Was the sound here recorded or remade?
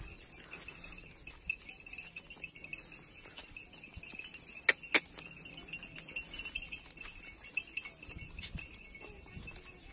recorded